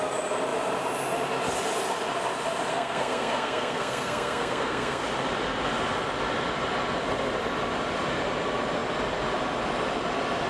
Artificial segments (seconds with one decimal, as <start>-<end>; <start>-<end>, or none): 2.7-5.0